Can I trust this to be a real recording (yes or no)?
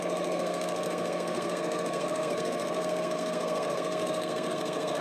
no